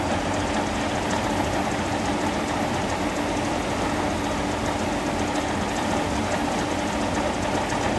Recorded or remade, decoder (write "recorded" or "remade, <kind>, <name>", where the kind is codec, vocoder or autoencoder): recorded